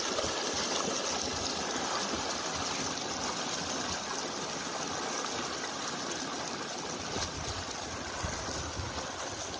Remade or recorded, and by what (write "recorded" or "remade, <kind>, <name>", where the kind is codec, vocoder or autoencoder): recorded